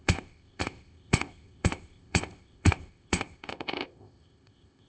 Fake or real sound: fake